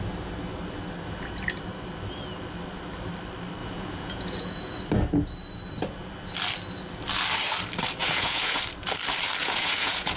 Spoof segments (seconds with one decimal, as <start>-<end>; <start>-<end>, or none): 3.6-4.8; 8.0-8.6; 9.4-10.2